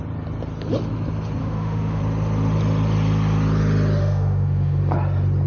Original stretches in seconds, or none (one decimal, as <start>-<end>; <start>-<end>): 0.0-1.4; 2.0-4.0; 4.8-5.5